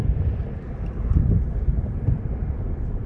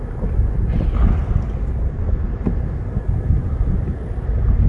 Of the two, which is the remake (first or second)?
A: first